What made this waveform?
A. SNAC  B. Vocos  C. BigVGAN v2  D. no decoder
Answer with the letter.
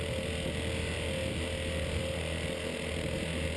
D